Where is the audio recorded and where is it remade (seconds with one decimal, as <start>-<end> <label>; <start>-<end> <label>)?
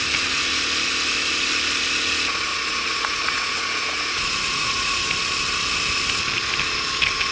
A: 0.0-2.5 recorded; 2.5-5.0 remade; 5.0-7.3 recorded